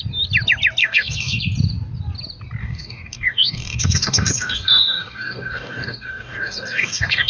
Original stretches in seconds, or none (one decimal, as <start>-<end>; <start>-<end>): 0.0-0.8; 1.4-2.6